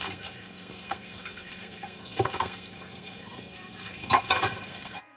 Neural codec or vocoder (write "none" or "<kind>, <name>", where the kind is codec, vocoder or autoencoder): codec, SNAC